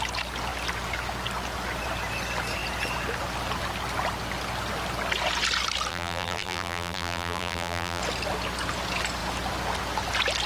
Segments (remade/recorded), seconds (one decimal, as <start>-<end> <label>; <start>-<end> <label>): 0.0-5.9 recorded; 5.9-8.0 remade; 8.0-10.5 recorded